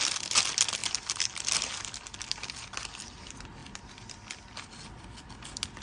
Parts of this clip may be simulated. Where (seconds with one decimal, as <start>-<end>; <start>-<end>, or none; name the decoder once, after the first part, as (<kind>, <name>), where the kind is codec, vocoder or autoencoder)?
0.8-2.6 (vocoder, BigVGAN v2)